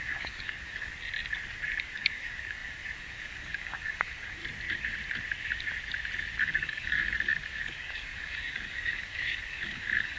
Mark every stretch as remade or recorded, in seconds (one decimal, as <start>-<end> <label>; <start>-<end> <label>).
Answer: 0.0-0.9 remade; 0.9-1.8 recorded; 1.8-4.4 remade; 4.4-6.4 recorded; 6.4-10.2 remade